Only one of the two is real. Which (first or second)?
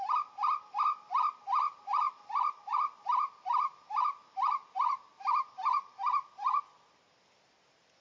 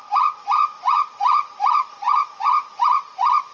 first